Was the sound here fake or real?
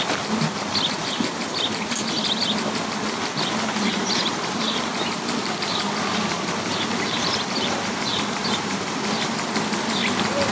fake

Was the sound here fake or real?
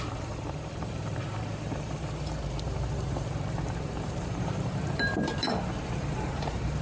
fake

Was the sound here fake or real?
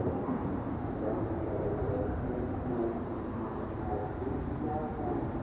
fake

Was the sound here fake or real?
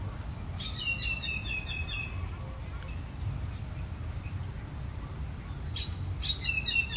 real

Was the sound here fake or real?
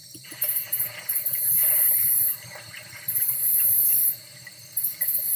fake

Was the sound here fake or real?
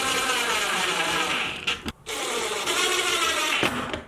fake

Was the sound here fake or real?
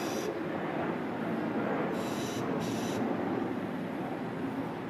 real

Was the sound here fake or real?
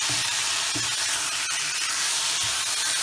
real